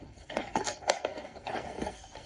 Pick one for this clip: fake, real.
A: fake